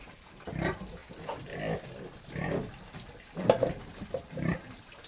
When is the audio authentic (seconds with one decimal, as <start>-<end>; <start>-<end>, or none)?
1.0-4.1